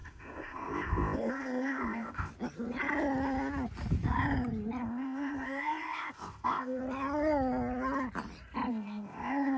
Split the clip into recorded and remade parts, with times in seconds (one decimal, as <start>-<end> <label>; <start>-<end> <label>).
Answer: 0.0-2.3 remade; 2.3-4.8 recorded; 4.8-6.8 remade; 6.8-8.7 recorded; 8.7-9.6 remade